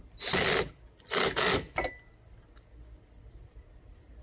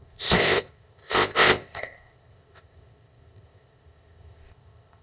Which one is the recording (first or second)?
first